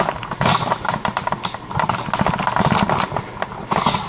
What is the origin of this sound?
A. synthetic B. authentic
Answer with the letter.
B